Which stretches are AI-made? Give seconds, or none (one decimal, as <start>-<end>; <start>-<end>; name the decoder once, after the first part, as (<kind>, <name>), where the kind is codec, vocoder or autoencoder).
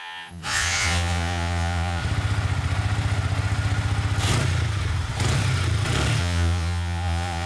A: 0.0-2.0 (vocoder, Vocos); 6.2-7.5